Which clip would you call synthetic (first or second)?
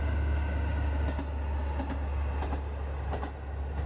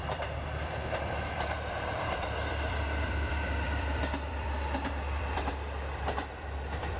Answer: second